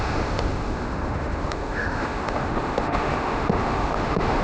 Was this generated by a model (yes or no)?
yes